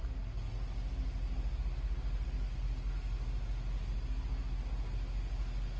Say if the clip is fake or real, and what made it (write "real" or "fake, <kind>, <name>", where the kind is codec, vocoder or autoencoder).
real